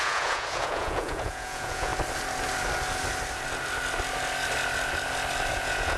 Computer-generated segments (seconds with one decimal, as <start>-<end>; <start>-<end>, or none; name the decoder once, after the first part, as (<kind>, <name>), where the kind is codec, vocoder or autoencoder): 0.0-1.9 (vocoder, Vocos); 5.5-6.0

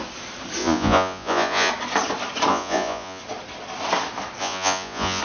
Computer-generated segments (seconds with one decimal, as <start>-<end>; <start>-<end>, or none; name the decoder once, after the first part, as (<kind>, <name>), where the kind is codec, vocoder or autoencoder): 0.6-1.7 (vocoder, Vocos); 2.5-3.2; 4.4-5.2

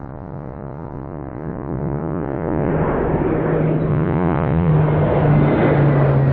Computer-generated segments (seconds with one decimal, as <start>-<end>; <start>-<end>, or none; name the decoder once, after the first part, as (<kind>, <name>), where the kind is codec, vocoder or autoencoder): 0.0-2.7 (vocoder, Vocos); 3.9-4.7

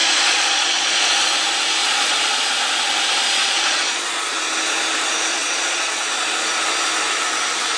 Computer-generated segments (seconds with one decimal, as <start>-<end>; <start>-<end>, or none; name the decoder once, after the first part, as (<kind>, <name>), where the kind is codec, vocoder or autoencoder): 0.0-1.1 (vocoder, Vocos); 1.8-2.3; 3.4-4.3; 5.3-6.0

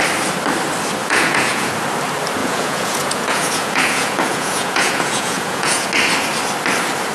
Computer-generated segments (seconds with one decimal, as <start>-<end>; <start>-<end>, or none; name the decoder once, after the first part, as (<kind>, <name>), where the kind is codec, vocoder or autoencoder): 1.0-1.7 (vocoder, Vocos); 2.4-5.9